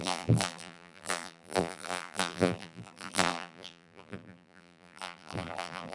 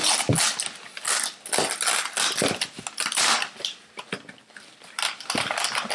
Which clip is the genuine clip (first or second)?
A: second